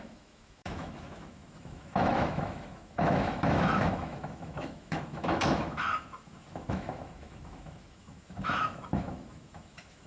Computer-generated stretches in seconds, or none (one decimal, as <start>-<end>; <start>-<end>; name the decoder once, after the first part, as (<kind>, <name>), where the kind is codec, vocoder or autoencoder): 0.0-10.1 (autoencoder, DAC-VAE)